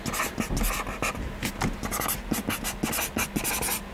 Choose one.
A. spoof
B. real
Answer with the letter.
B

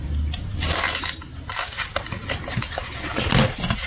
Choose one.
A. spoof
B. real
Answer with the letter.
B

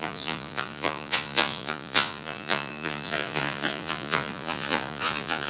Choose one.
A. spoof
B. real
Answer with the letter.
A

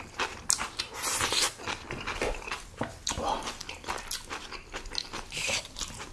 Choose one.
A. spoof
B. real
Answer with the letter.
B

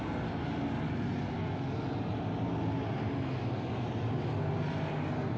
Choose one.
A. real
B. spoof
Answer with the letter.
A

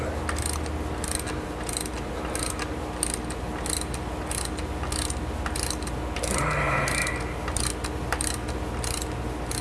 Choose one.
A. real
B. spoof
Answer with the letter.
A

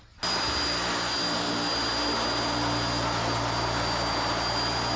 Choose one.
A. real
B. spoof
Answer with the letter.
A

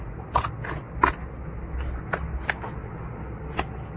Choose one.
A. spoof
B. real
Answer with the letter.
B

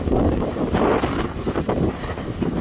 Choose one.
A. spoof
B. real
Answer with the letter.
B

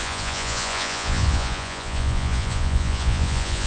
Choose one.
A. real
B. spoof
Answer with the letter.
B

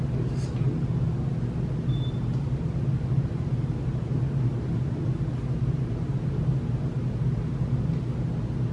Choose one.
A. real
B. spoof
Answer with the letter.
A